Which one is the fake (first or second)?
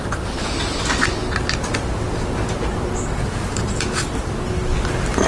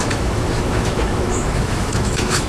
second